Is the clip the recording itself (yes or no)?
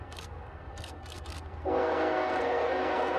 no